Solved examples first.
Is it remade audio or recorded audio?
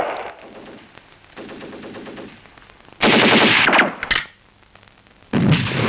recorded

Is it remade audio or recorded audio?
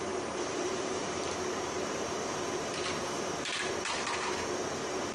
remade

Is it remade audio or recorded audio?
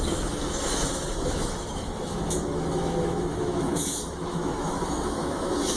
remade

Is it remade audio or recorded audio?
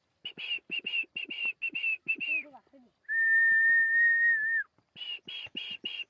recorded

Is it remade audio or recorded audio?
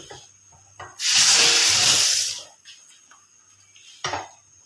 recorded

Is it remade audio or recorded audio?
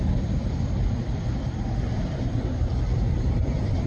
remade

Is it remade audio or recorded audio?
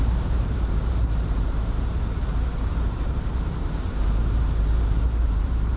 remade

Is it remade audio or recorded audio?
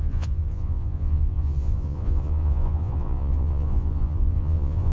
remade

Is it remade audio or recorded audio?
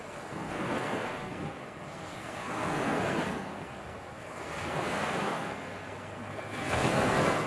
remade